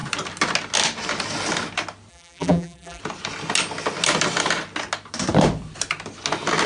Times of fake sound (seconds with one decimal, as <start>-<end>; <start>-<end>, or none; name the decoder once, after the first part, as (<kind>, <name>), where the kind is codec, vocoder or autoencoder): 2.1-3.0 (vocoder, BigVGAN v2)